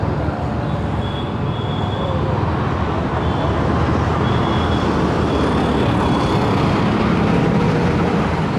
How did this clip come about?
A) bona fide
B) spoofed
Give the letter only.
A